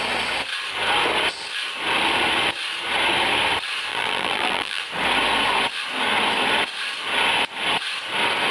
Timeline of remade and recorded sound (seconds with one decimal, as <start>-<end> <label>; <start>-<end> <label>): 0.0-3.9 recorded; 3.9-4.8 remade; 4.8-8.5 recorded